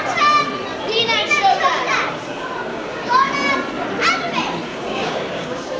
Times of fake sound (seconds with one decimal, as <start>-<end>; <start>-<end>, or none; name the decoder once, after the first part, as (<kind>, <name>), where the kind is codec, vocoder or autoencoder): 2.7-3.3 (codec, DAC); 4.7-5.8